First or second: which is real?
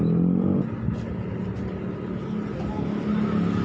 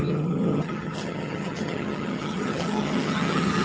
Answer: first